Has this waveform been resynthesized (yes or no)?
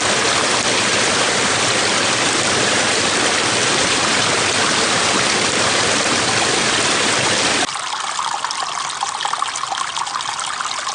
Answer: no